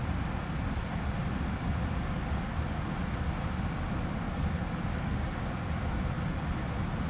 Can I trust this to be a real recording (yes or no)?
yes